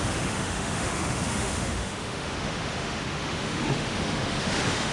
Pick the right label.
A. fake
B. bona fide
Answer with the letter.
A